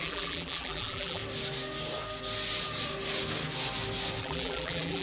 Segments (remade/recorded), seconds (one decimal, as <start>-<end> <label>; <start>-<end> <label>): 0.0-1.2 remade; 1.2-4.2 recorded; 4.2-5.0 remade